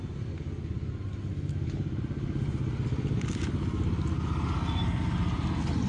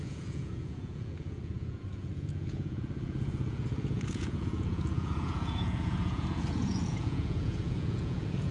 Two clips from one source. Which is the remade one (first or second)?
second